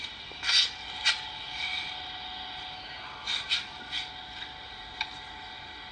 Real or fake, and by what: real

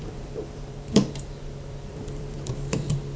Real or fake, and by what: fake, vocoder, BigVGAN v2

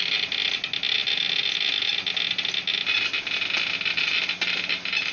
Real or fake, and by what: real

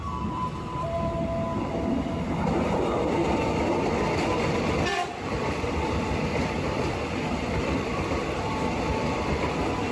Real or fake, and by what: fake, vocoder, BigVGAN v2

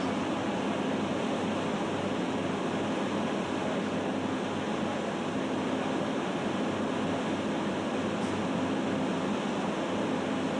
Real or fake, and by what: real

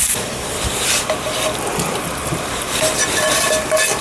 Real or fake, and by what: fake, vocoder, BigVGAN v2